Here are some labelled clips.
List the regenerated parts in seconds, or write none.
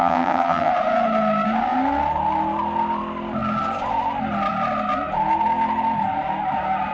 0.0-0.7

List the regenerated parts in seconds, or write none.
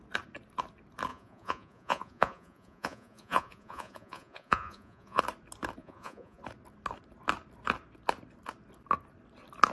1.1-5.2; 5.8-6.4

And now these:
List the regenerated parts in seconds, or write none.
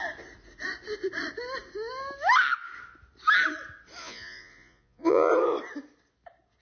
4.0-5.3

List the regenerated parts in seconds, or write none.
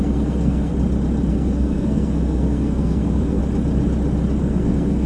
0.0-0.7; 1.3-3.4; 4.4-5.1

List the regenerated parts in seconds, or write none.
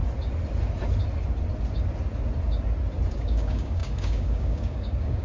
3.1-5.2